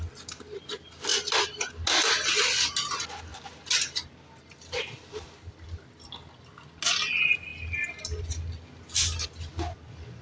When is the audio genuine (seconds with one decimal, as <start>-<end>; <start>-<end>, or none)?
0.0-10.2